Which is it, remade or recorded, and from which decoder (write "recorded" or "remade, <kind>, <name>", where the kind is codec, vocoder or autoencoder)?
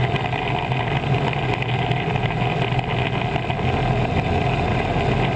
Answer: recorded